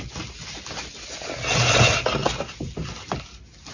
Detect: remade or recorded recorded